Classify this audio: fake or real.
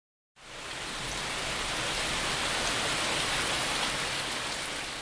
real